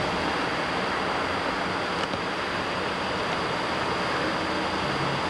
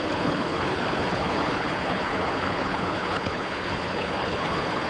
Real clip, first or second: first